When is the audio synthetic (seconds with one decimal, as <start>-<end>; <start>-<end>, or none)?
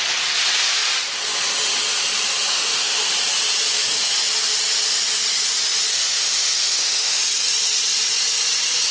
2.5-3.1; 5.9-7.2